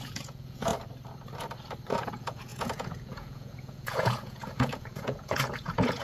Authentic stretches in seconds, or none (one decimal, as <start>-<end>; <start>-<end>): 0.7-2.0